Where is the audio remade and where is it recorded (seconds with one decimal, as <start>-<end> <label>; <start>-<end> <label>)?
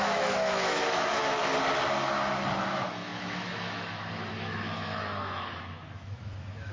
0.0-1.4 remade; 1.4-2.6 recorded; 2.6-6.7 remade